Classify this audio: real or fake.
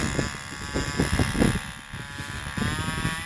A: real